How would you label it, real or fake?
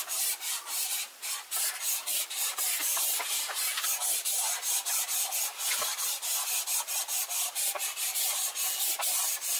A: fake